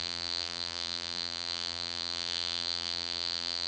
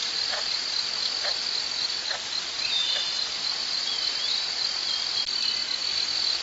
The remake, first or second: first